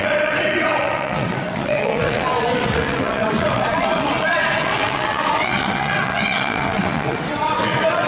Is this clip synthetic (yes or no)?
yes